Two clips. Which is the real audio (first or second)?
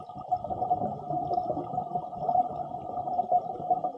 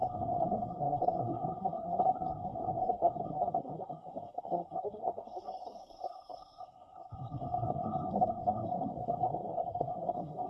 first